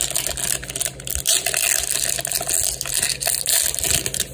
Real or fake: real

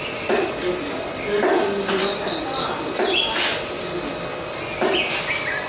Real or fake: real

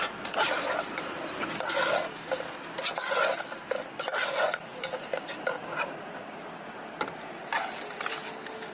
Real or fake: real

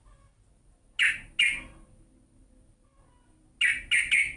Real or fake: real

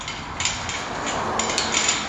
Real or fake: real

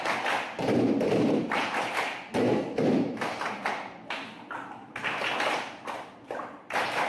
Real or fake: real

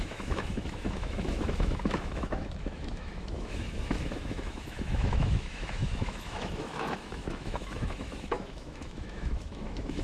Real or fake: fake